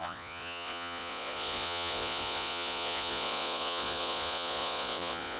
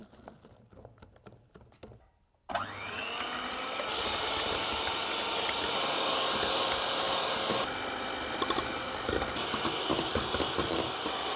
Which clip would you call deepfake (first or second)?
first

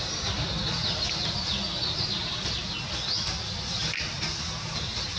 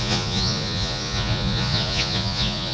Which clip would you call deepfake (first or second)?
second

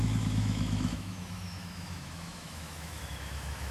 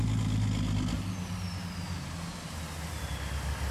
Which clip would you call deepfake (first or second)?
first